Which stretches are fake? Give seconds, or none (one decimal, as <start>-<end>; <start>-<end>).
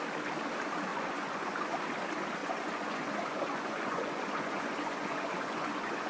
0.9-1.8; 2.4-6.1